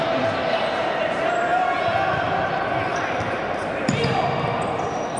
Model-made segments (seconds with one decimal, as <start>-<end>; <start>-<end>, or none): none